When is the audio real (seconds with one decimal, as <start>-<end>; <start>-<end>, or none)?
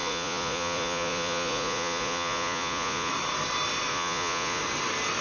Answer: 3.1-3.9; 4.6-5.2